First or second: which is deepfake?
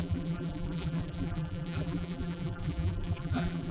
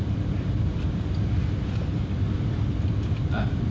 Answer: first